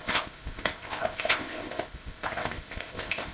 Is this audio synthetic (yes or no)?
yes